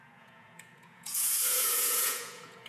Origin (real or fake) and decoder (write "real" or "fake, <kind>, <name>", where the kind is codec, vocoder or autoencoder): fake, vocoder, Vocos